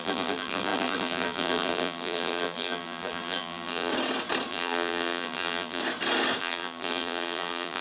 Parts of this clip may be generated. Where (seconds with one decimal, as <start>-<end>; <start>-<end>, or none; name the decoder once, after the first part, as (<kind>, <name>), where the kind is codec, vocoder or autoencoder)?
0.0-3.9 (vocoder, BigVGAN v2); 4.5-5.8; 6.4-7.8